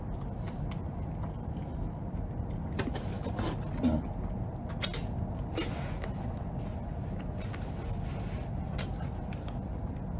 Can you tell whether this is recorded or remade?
recorded